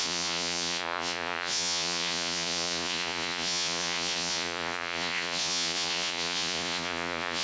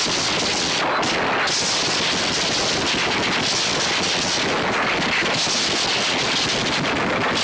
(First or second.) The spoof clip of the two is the first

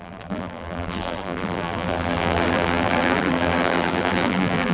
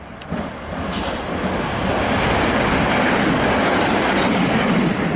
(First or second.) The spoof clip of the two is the first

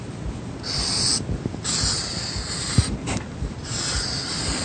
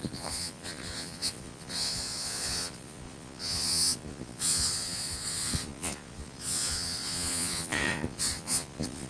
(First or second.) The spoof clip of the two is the second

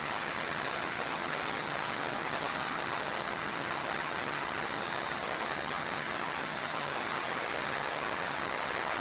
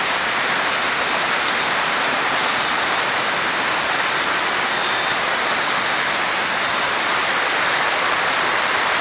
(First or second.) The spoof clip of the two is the first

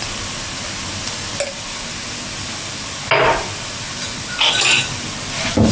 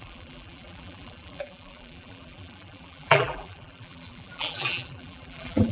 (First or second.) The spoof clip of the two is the second